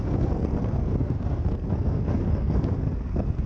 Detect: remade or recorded remade